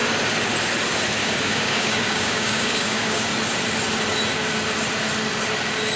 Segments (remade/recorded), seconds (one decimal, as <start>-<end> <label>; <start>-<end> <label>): 0.0-1.2 recorded; 1.2-3.3 remade; 3.3-6.0 recorded